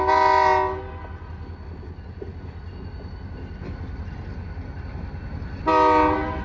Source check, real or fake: real